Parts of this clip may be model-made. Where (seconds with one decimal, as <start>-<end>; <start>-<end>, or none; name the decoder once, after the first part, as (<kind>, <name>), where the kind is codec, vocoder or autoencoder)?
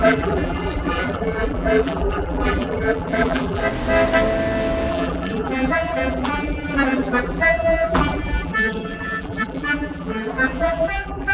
0.0-3.6 (vocoder, BigVGAN v2); 4.9-11.3